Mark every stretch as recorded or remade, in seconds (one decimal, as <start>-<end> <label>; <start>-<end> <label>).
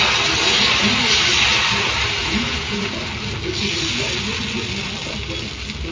0.0-2.2 recorded; 2.2-2.9 remade; 2.9-5.9 recorded